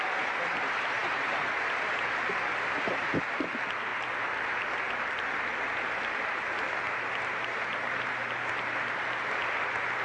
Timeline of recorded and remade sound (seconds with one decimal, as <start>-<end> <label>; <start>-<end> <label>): 0.0-10.0 recorded